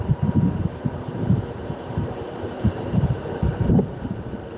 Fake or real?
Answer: fake